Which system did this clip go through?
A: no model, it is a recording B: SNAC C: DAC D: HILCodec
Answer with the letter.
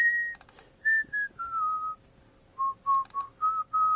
A